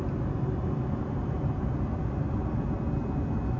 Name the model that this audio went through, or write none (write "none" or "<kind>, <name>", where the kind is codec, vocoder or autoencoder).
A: none